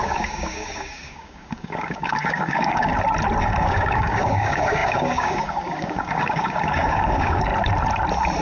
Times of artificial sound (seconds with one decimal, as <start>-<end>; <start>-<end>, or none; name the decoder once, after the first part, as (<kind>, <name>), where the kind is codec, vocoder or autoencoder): 0.0-2.9 (codec, DAC); 3.4-7.5

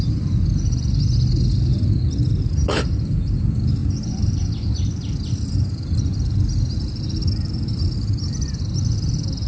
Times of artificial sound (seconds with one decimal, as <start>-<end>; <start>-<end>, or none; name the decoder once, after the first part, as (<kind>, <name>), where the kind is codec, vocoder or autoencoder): 3.8-4.5 (vocoder, BigVGAN v2)

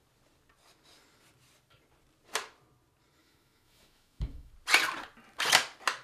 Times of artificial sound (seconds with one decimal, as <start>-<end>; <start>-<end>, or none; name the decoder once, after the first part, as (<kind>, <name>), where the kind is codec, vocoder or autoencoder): 3.2-4.5 (autoencoder, DAC-VAE)

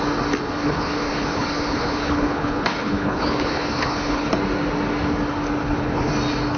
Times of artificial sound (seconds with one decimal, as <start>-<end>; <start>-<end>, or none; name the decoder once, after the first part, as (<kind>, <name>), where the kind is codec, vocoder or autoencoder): 0.4-4.3 (codec, HILCodec); 5.6-6.1

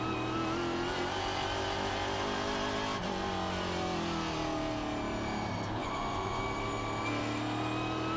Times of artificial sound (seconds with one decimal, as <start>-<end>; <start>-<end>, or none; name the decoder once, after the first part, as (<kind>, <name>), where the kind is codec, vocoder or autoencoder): 5.8-6.4 (vocoder, Vocos)